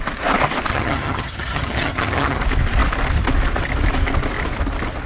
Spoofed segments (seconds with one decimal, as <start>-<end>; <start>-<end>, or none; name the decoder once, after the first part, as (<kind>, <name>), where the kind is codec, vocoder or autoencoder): 0.7-2.4 (vocoder, HiFi-GAN)